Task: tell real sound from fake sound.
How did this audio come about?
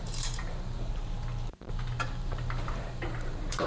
fake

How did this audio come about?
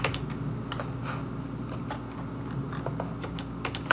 real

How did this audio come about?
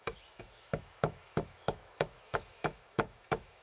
fake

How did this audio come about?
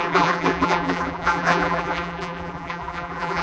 fake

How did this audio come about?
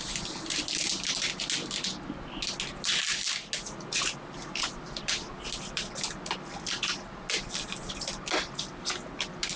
real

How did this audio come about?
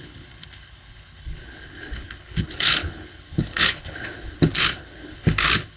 fake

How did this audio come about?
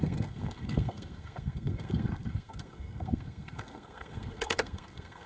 fake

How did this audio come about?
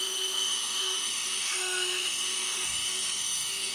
fake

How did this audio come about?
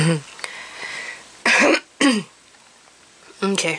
real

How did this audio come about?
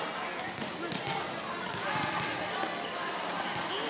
real